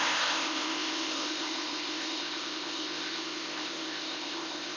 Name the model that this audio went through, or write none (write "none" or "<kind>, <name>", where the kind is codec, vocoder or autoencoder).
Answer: codec, ZipCodec